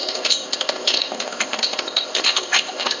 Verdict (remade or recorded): remade